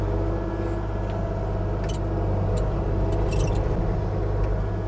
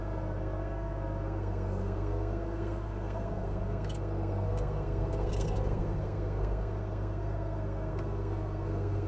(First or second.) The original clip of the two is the first